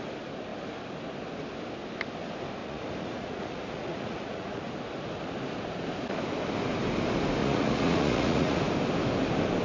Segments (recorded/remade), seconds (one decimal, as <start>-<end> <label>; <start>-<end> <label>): 0.0-2.6 recorded; 2.6-4.7 remade; 4.7-7.4 recorded; 7.4-8.6 remade; 8.6-9.6 recorded